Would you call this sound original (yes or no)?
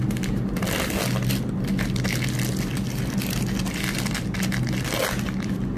yes